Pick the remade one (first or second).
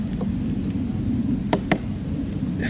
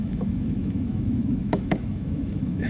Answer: second